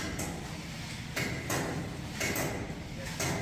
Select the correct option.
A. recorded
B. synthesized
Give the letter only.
A